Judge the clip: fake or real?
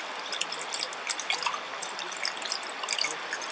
real